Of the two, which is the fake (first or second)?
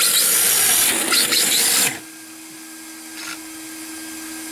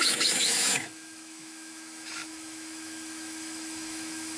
second